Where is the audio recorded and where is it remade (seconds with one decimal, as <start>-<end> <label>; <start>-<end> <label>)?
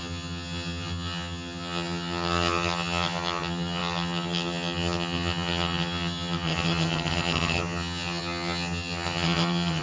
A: 0.0-9.8 remade